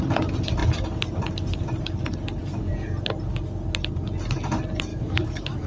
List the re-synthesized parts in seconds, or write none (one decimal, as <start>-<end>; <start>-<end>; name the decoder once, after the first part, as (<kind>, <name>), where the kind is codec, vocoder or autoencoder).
4.9-5.7 (autoencoder, DAC-VAE)